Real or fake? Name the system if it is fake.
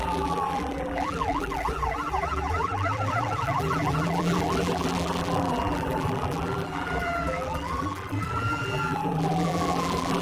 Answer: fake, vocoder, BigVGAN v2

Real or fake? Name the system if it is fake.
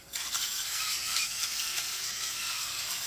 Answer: fake, codec, SNAC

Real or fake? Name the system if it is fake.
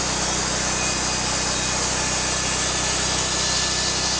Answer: real